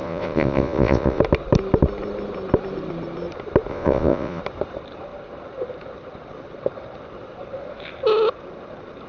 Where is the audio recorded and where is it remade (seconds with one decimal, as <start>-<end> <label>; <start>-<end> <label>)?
0.0-1.2 remade; 1.2-3.7 recorded; 3.7-4.4 remade; 4.4-9.1 recorded

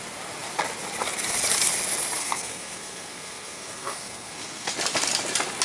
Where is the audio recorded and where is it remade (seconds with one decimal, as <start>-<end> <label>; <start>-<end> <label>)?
0.0-2.2 recorded; 2.2-4.7 remade; 4.7-5.6 recorded

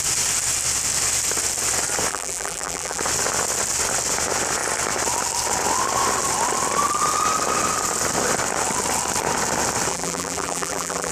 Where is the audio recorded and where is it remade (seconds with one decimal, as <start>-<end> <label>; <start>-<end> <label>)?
0.0-2.1 recorded; 2.1-3.0 remade; 3.0-9.9 recorded; 9.9-11.1 remade

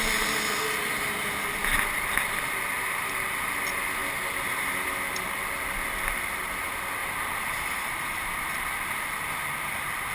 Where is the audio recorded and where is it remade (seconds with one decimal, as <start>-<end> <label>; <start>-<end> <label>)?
0.0-7.0 recorded; 7.0-8.2 remade; 8.2-10.1 recorded

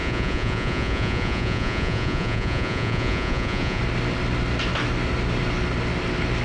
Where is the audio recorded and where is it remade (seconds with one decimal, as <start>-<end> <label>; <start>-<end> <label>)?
0.0-3.8 remade; 3.8-6.4 recorded

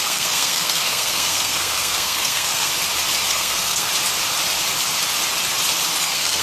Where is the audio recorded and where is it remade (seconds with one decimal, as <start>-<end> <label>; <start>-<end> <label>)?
0.0-2.7 remade; 2.7-3.3 recorded; 3.3-3.9 remade; 3.9-6.0 recorded; 6.0-6.4 remade

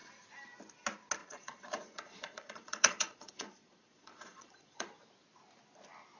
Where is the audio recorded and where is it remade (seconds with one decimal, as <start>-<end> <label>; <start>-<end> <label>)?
0.0-1.2 recorded; 1.2-4.9 remade; 4.9-6.2 recorded

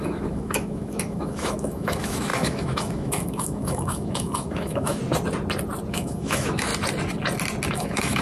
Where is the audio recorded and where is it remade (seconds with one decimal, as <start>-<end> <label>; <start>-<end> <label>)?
0.0-5.0 remade; 5.0-5.9 recorded; 5.9-6.7 remade; 6.7-7.7 recorded; 7.7-8.2 remade